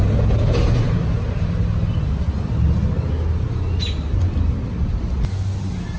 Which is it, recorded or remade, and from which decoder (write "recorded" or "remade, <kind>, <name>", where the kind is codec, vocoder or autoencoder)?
recorded